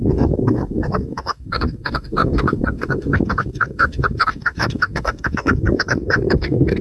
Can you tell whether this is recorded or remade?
remade